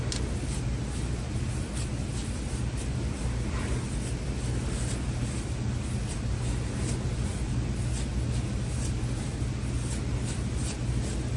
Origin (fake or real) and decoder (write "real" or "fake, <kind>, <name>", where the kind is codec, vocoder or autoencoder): real